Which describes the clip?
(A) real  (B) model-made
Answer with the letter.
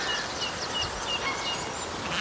A